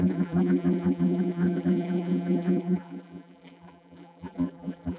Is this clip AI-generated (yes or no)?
yes